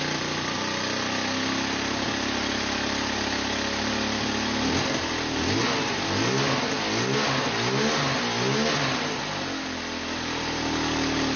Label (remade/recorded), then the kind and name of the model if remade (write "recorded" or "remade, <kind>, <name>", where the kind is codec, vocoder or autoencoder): recorded